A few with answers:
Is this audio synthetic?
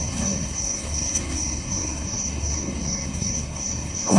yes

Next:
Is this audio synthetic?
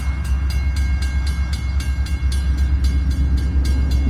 no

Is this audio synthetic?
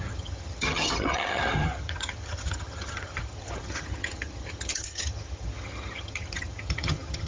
yes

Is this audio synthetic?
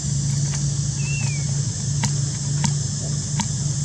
no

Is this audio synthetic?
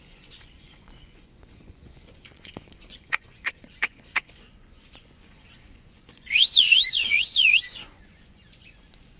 yes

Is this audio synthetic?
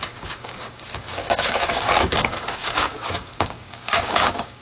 yes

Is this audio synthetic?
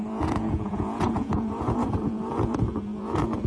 yes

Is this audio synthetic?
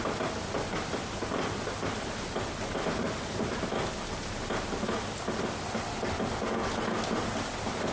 no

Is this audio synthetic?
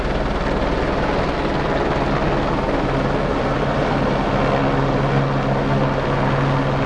no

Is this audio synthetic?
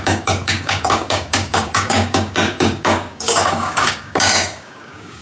yes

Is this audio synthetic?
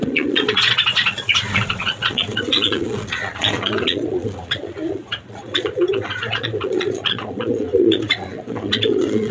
yes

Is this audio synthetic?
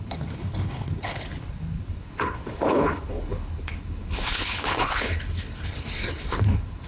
yes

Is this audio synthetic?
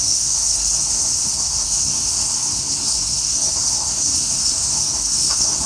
yes